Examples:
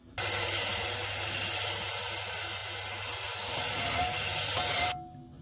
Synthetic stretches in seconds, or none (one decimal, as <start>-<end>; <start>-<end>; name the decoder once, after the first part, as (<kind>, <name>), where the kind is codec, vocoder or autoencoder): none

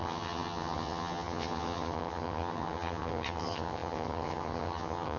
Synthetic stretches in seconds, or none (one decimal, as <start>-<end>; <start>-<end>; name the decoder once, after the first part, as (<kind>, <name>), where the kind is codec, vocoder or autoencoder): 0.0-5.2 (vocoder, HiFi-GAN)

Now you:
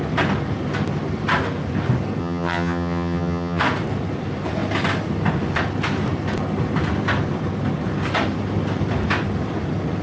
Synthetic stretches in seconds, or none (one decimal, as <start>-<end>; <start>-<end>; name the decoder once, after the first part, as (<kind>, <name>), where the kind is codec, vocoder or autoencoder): 2.2-3.6 (vocoder, HiFi-GAN)

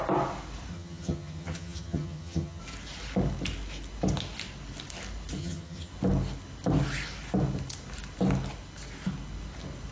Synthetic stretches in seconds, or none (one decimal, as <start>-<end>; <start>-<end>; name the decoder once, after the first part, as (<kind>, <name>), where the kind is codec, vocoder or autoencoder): 0.7-2.6 (vocoder, HiFi-GAN); 5.4-5.9

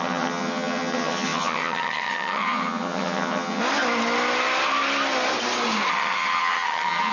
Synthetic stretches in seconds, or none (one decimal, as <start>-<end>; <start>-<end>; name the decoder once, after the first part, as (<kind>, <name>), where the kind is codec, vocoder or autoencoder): 0.0-3.6 (vocoder, HiFi-GAN); 5.9-7.1

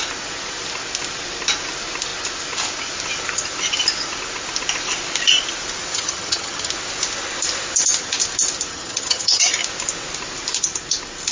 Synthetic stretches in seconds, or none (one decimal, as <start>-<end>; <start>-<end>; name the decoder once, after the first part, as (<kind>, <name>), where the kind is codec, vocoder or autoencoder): 5.9-6.7 (vocoder, HiFi-GAN); 8.7-9.5

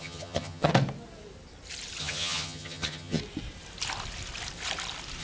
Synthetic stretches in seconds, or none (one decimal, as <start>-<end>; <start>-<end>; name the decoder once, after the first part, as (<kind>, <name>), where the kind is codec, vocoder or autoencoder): 0.0-0.7 (vocoder, HiFi-GAN); 2.0-3.2